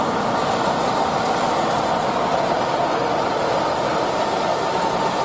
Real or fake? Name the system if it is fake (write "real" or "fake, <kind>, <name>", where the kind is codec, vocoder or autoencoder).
real